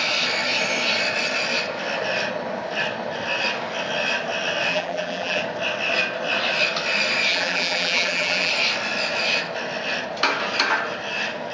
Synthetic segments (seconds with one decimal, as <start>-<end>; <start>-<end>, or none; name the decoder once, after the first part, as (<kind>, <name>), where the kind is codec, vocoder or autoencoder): 4.7-5.4 (vocoder, BigVGAN v2); 7.3-8.5